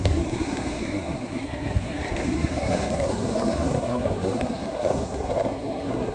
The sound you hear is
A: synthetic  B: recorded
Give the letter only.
A